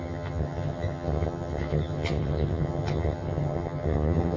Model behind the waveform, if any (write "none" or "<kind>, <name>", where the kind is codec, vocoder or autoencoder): vocoder, HiFi-GAN